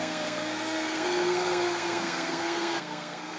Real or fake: fake